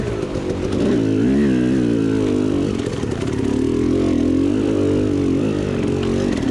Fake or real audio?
real